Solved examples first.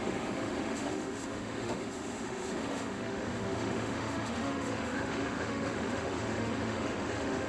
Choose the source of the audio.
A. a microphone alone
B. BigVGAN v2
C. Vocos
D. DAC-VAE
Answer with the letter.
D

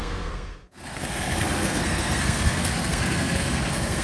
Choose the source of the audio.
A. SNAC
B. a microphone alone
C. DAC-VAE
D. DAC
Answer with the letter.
A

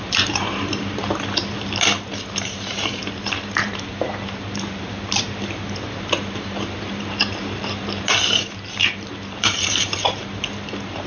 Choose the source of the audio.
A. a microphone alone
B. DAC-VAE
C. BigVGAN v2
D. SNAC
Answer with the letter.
C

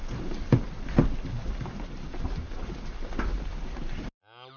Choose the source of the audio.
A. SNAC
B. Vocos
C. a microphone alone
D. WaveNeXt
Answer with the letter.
C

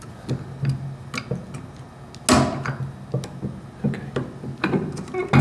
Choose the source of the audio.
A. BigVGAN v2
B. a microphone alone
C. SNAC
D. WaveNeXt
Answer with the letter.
B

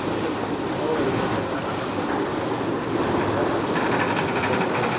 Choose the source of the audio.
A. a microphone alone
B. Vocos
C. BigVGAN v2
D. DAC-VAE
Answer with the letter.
A